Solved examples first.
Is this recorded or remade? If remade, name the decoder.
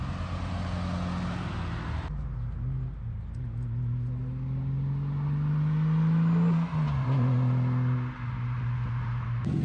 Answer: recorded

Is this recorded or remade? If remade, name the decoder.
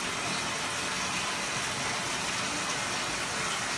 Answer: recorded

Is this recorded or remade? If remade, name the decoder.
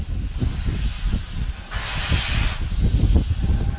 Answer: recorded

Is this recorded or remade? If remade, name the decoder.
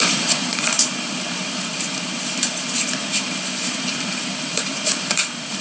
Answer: remade, vocoder, BigVGAN v2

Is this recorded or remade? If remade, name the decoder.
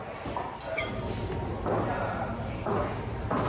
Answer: recorded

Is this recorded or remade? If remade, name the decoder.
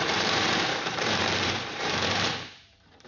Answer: remade, vocoder, BigVGAN v2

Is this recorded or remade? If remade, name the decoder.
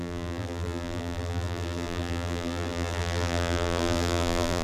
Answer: remade, vocoder, BigVGAN v2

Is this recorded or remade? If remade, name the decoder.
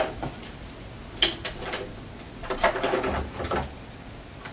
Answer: recorded